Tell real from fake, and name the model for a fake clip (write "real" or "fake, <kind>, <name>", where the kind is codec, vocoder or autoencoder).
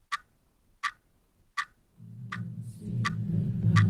real